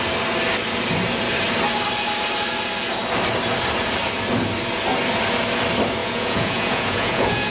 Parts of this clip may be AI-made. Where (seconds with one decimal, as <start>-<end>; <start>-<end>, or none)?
6.0-7.5